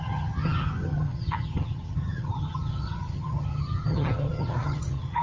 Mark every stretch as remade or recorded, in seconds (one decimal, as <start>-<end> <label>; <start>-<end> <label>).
0.0-5.2 remade